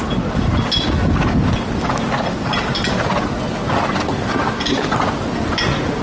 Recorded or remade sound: recorded